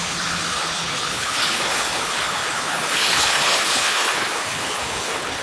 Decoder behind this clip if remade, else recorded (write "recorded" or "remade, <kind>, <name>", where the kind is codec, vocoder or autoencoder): remade, codec, HILCodec